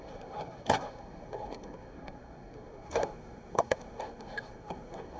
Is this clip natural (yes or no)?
no